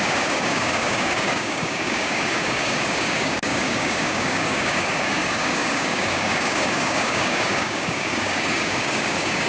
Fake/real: fake